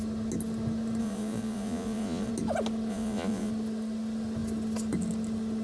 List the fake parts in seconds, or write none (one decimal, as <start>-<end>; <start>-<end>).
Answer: 1.0-2.3; 2.9-3.5

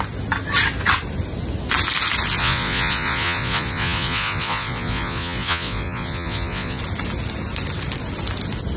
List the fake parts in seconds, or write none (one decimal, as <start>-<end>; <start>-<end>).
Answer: 2.4-6.8